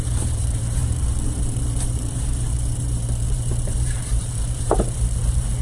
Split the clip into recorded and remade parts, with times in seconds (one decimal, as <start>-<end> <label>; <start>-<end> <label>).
0.0-5.6 remade